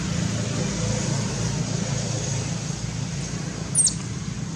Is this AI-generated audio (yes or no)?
no